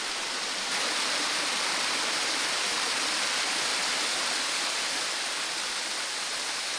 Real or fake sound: real